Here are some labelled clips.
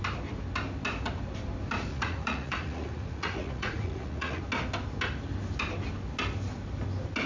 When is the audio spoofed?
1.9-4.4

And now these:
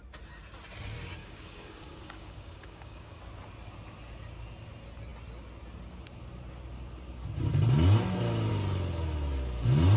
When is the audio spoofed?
1.2-3.2

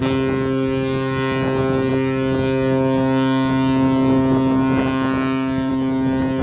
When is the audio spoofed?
none

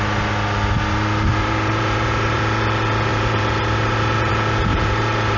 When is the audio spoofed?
1.3-2.4; 3.1-4.3; 4.7-5.4